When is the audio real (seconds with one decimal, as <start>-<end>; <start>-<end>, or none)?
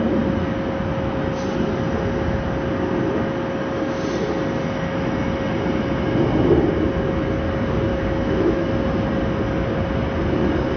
0.0-7.9; 8.7-10.8